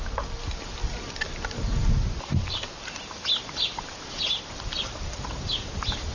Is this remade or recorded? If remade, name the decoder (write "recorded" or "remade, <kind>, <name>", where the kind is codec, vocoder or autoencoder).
recorded